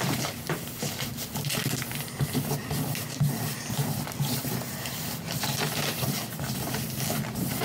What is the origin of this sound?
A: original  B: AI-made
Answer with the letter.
A